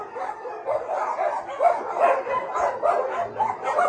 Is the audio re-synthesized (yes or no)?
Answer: no